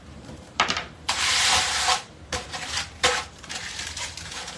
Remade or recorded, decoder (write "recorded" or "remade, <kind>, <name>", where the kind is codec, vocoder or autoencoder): remade, vocoder, BigVGAN v2